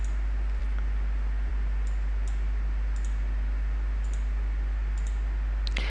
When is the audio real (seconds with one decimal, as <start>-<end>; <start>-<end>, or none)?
0.0-5.9